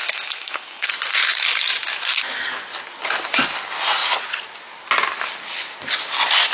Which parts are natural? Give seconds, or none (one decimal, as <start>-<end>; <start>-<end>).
0.9-6.5